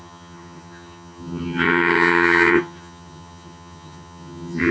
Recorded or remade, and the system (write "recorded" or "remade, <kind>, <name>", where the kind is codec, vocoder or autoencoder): remade, vocoder, HiFi-GAN